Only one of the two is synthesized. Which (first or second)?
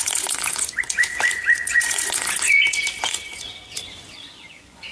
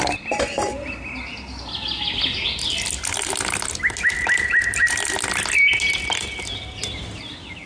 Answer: first